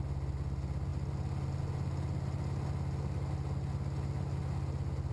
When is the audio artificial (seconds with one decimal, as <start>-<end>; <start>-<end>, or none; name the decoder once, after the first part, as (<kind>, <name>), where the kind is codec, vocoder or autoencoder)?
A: none

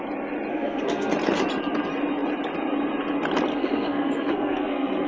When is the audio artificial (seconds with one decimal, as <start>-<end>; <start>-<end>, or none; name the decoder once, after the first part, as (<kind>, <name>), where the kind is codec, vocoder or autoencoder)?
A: 0.5-1.1 (codec, SNAC); 3.5-5.1

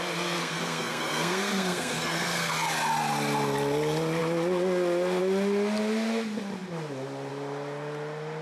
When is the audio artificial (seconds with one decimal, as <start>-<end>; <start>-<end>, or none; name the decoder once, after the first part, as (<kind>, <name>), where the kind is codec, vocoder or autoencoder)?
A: 0.4-2.5 (codec, SNAC)

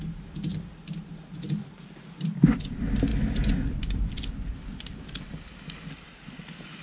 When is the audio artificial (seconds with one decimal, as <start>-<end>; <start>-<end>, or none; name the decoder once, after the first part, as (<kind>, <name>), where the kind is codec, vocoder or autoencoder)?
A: none

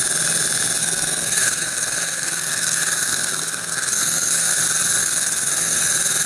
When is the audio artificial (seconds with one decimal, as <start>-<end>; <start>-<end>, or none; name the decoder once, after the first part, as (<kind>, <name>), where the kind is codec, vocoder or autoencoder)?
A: 0.8-4.6 (codec, SNAC); 5.0-5.8

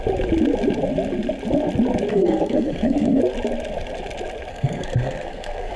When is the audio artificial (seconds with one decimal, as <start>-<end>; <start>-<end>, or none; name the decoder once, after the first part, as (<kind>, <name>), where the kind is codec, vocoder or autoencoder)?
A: 2.1-3.2 (codec, SNAC); 4.5-5.8

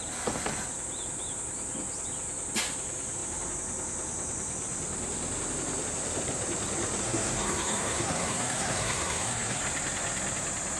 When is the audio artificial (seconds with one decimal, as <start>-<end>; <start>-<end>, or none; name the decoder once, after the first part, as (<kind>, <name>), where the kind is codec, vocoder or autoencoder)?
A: 7.0-9.6 (codec, SNAC)

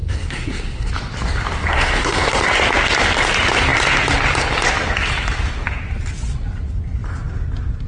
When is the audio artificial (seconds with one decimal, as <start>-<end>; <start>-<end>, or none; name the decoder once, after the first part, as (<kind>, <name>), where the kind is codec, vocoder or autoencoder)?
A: 0.0-0.9 (codec, SNAC); 1.7-2.4